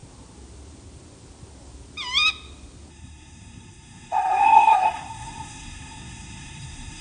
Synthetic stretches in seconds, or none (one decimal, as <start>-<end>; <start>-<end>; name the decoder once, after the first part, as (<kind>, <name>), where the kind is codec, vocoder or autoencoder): 2.9-7.0 (codec, SNAC)